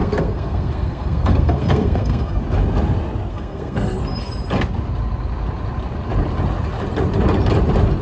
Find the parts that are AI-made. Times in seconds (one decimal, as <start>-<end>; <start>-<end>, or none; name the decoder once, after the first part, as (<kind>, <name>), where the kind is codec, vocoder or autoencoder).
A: 0.0-2.4 (codec, SNAC); 3.3-4.0

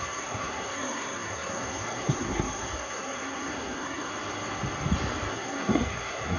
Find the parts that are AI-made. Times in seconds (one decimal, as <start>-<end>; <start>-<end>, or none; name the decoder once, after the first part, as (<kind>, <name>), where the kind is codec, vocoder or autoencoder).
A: 0.0-4.1 (codec, SNAC); 5.3-6.4

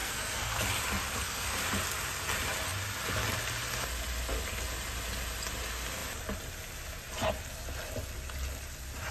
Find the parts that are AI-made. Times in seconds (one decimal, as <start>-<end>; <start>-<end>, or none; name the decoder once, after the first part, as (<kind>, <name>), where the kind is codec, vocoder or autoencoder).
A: 0.0-0.6 (codec, SNAC); 1.1-1.6